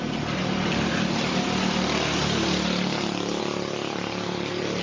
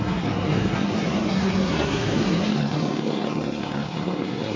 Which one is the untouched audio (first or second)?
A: first